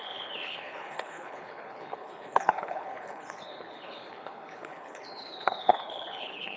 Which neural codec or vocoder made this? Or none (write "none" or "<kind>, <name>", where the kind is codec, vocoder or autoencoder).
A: codec, HILCodec